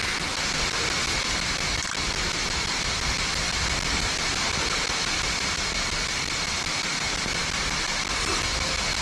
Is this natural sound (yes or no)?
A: yes